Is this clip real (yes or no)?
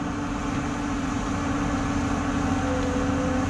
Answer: yes